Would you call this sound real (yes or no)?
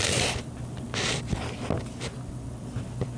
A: yes